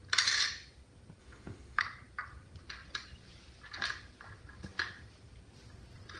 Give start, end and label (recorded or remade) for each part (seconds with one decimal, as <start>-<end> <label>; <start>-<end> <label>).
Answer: 0.0-1.2 recorded; 1.2-1.8 remade; 1.8-6.2 recorded